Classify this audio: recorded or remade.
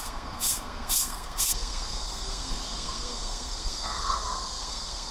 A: remade